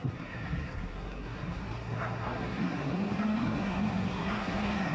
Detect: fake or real fake